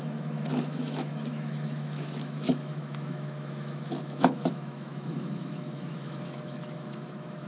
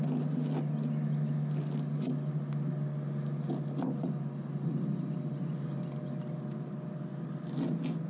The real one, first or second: second